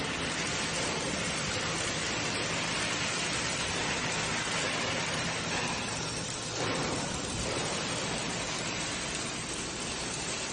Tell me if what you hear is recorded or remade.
recorded